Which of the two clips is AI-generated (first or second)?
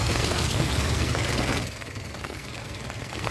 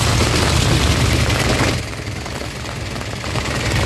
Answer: first